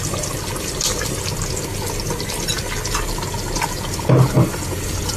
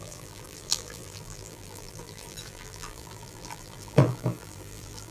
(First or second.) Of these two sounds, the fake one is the second